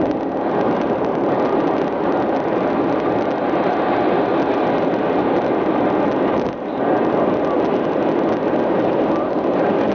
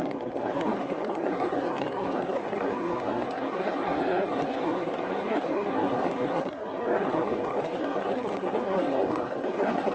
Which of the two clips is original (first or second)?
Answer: first